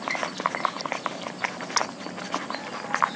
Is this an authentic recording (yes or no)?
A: yes